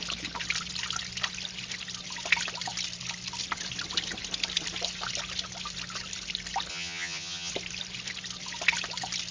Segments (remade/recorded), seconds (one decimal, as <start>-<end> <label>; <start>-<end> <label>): 0.0-6.7 recorded; 6.7-7.5 remade; 7.5-9.3 recorded